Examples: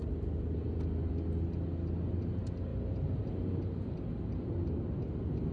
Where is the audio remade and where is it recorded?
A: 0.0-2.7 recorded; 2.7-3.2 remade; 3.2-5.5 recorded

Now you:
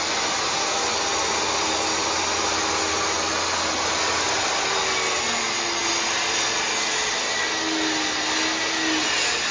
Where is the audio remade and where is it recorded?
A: 0.0-9.5 recorded

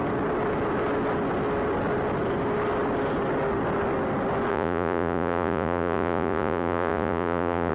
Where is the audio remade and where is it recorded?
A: 0.0-4.5 recorded; 4.5-7.7 remade

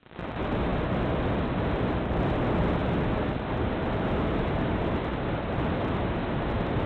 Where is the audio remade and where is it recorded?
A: 0.0-0.7 recorded; 0.7-2.4 remade; 2.4-6.9 recorded

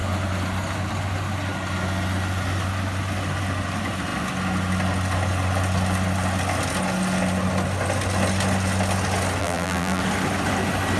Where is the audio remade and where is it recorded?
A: 0.0-9.4 recorded; 9.4-10.0 remade; 10.0-11.0 recorded